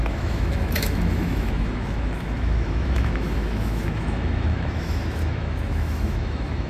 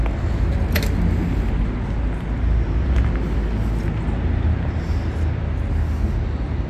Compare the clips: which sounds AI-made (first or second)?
first